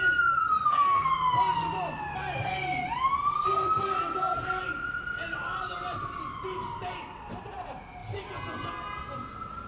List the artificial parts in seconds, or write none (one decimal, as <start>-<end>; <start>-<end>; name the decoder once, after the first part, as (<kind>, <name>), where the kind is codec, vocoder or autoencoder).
0.4-1.1 (codec, SNAC); 3.3-4.6